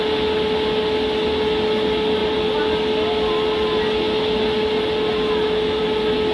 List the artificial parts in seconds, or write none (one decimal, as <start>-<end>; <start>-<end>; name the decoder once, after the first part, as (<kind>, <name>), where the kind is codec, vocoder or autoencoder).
none